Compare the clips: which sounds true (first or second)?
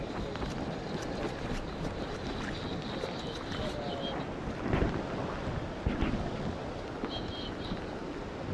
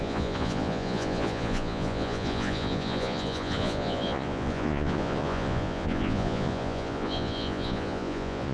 first